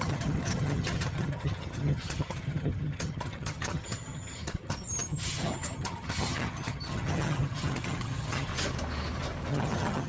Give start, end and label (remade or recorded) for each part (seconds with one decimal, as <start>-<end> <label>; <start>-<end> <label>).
0.0-8.5 remade; 8.5-9.5 recorded; 9.5-10.1 remade